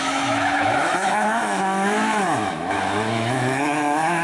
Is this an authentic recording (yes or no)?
no